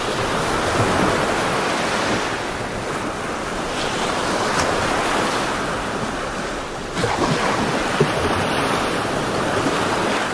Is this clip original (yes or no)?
yes